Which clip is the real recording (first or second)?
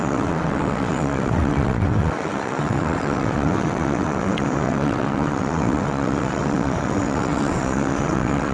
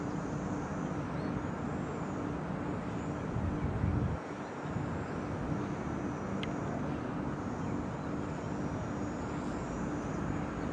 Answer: second